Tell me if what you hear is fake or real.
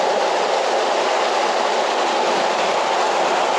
real